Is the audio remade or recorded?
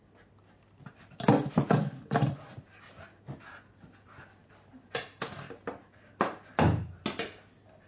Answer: recorded